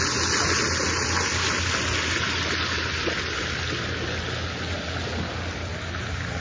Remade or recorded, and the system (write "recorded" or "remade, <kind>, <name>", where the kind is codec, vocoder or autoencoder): recorded